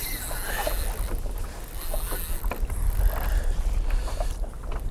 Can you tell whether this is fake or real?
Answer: real